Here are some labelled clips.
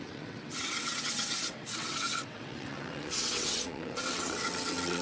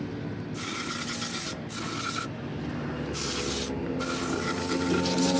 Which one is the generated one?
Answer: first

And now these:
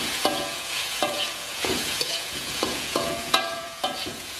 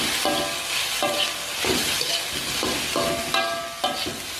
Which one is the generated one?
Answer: first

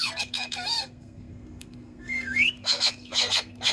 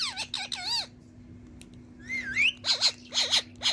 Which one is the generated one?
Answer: first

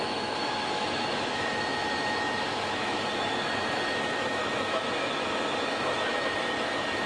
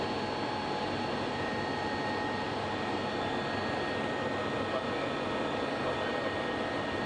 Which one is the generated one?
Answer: first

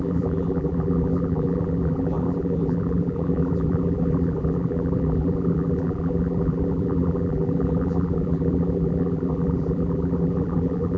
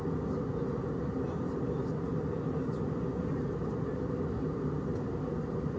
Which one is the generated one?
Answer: first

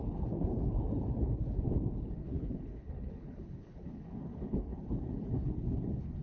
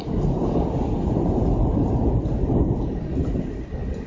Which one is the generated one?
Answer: first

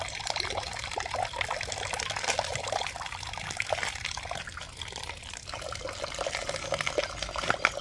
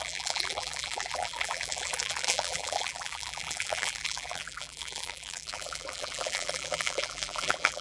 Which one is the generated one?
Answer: second